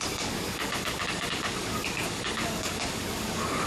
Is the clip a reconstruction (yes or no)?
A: yes